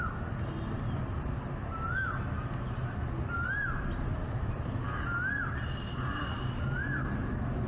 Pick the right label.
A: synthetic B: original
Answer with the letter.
B